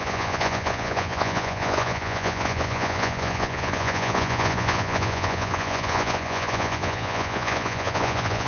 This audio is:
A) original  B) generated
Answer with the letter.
B